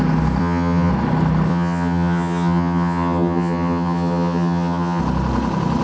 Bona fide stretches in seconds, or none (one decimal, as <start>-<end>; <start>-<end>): 0.0-0.4; 0.9-1.5; 5.0-5.8